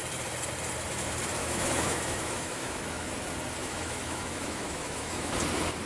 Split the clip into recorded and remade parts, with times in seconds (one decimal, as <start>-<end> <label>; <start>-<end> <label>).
0.0-1.4 recorded; 1.4-3.1 remade; 3.1-3.6 recorded; 3.6-5.3 remade; 5.3-5.9 recorded